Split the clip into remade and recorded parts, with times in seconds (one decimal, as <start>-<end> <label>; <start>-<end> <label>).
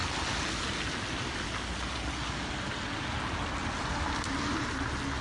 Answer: 0.0-5.2 recorded